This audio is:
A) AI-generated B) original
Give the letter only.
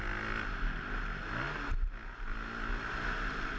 B